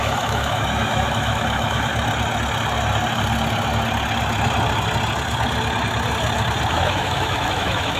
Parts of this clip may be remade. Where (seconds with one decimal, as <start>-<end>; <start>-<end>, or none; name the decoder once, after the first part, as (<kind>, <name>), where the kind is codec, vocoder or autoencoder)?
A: 0.0-1.9 (autoencoder, DAC-VAE); 6.7-8.0